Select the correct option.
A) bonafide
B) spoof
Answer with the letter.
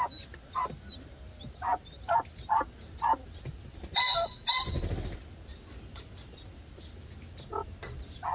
A